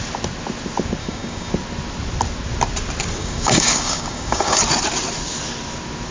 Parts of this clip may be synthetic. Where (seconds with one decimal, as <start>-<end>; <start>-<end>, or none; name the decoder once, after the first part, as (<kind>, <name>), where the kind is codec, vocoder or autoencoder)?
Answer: 1.0-1.5 (codec, DAC); 3.2-4.6